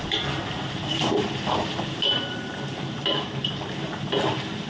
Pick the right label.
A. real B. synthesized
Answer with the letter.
B